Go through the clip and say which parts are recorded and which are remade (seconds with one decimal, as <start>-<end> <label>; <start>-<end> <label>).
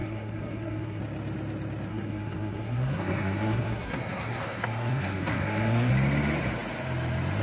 0.0-1.0 remade; 1.0-1.9 recorded; 1.9-5.9 remade; 5.9-7.4 recorded